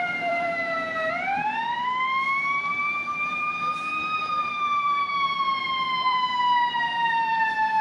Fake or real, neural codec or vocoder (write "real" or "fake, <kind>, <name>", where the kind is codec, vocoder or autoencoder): fake, vocoder, BigVGAN v2